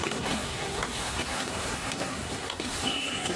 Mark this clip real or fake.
fake